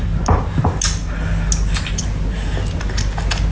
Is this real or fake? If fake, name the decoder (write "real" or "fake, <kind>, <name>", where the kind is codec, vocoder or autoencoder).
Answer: real